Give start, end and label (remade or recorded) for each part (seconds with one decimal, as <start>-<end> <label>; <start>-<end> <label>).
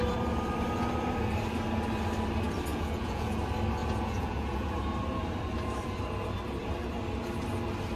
0.0-2.7 recorded; 2.7-3.4 remade; 3.4-3.8 recorded; 3.8-4.7 remade; 4.7-8.0 recorded